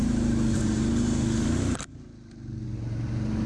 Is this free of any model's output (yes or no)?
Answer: yes